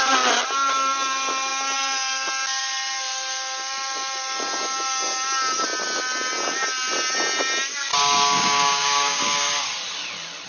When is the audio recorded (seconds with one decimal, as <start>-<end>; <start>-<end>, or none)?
0.0-7.9; 9.5-10.5